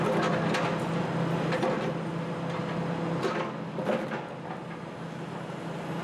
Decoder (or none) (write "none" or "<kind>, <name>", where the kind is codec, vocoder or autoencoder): none